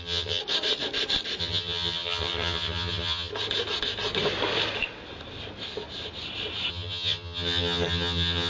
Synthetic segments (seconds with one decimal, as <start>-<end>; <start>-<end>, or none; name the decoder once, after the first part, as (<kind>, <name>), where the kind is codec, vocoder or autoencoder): 0.0-0.4 (vocoder, HiFi-GAN); 1.4-3.3; 6.7-8.5